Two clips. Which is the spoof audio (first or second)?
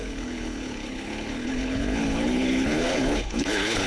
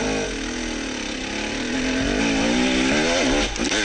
first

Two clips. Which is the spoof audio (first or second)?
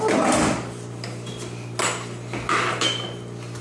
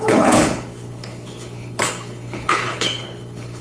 second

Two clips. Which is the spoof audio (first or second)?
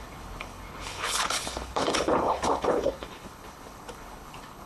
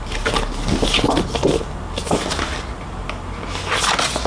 first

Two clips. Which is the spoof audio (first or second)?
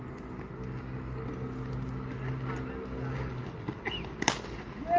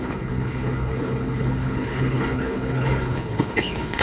second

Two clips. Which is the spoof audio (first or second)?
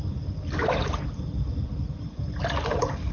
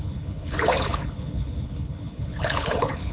second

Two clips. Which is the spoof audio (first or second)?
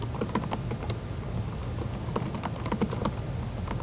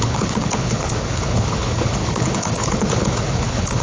second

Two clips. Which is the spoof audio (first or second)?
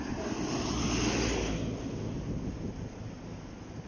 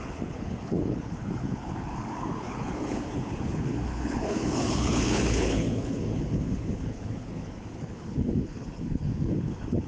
second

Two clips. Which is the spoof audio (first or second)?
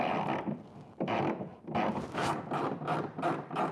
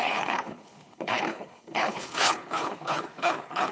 second